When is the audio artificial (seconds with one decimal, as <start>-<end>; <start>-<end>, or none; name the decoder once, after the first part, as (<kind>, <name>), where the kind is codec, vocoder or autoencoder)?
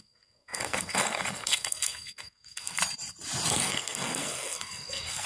0.0-2.8 (codec, SNAC); 3.5-5.3